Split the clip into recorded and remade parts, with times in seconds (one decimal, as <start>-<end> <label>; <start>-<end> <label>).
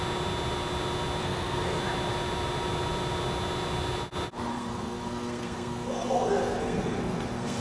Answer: 0.0-1.2 recorded; 1.2-1.8 remade; 1.8-4.5 recorded; 4.5-7.6 remade